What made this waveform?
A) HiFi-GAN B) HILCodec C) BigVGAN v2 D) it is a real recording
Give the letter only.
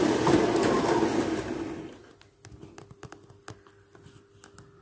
D